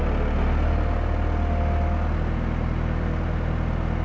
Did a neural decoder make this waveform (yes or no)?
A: no